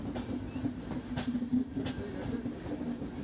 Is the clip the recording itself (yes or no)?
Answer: yes